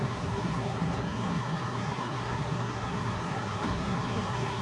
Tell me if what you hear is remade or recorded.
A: remade